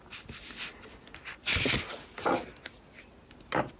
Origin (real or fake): real